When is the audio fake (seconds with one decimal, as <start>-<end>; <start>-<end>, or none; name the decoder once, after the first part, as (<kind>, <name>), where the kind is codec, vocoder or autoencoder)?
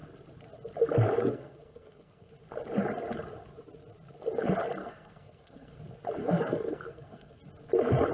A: 1.3-2.3 (codec, SNAC); 4.8-5.8; 6.2-7.4